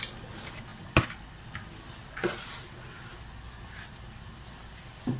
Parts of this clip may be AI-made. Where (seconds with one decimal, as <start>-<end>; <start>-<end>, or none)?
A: none